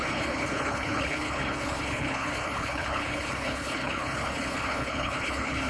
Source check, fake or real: fake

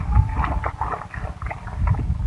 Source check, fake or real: real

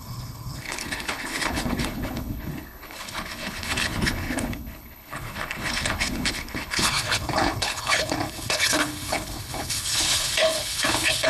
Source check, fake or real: fake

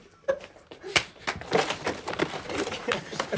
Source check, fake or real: real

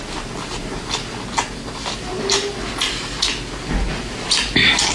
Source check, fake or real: real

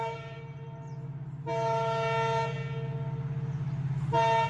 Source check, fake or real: real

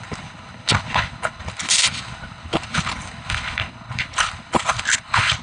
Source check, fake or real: fake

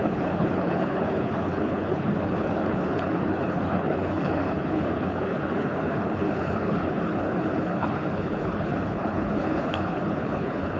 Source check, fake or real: fake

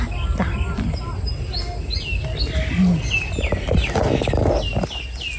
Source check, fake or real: real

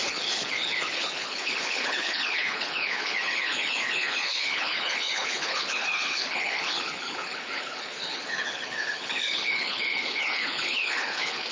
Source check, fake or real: fake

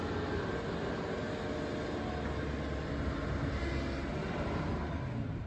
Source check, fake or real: real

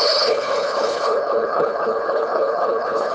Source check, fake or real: fake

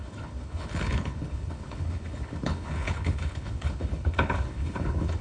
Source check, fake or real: fake